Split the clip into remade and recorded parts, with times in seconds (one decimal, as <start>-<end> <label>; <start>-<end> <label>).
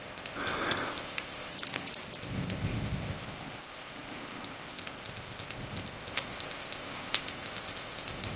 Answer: 0.0-1.5 remade; 1.5-2.2 recorded; 2.2-8.4 remade